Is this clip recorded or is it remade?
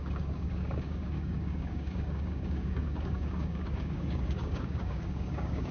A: remade